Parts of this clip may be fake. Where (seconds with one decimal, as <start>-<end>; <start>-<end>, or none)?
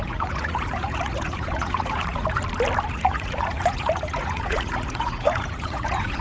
0.0-2.4; 2.9-6.2